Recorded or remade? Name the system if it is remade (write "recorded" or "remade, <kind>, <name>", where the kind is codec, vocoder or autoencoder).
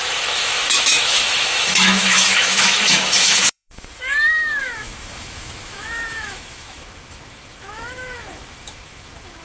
remade, autoencoder, DAC-VAE